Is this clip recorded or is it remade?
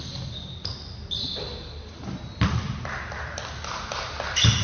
recorded